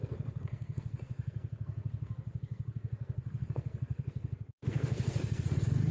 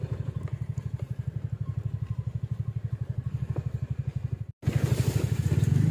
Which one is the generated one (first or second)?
first